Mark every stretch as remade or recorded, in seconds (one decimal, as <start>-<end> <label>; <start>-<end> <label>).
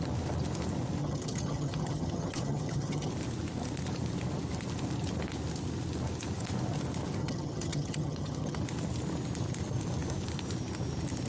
0.0-1.0 recorded; 1.0-3.1 remade; 3.1-7.2 recorded; 7.2-8.6 remade; 8.6-11.3 recorded